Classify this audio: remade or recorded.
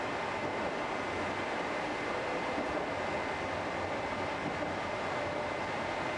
recorded